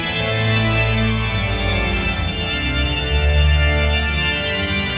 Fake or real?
real